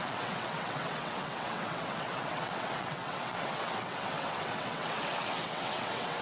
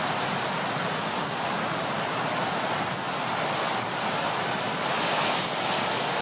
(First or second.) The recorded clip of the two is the second